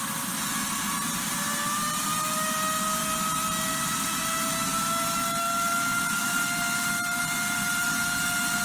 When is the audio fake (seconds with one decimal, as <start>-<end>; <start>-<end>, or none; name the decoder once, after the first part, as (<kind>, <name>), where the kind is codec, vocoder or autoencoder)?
none